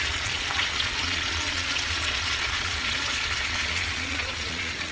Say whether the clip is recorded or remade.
remade